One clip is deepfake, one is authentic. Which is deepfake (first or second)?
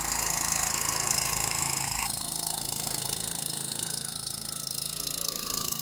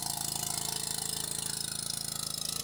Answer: first